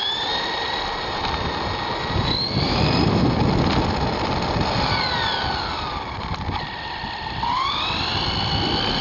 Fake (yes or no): no